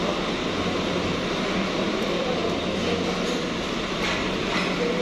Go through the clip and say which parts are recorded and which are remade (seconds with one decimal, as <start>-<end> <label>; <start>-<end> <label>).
0.0-5.0 recorded